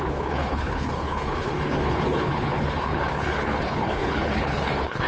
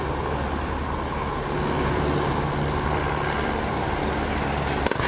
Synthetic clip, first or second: first